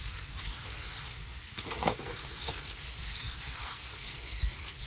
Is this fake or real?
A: fake